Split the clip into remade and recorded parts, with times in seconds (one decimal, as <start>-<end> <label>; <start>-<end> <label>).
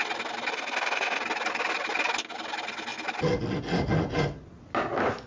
0.0-0.5 recorded; 0.5-1.2 remade; 1.2-5.3 recorded